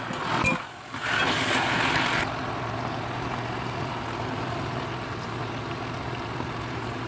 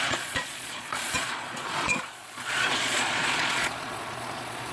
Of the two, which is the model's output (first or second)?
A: second